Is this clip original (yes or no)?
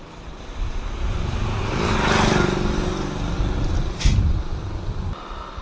yes